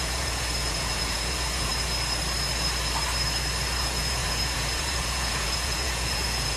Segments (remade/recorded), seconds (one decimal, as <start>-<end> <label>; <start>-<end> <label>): 0.0-1.7 remade; 1.7-3.8 recorded; 3.8-6.6 remade